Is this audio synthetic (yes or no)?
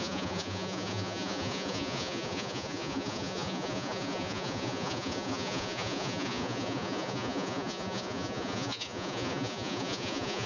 yes